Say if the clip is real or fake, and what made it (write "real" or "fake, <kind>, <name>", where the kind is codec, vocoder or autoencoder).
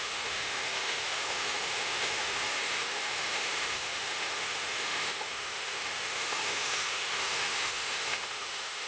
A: fake, autoencoder, DAC-VAE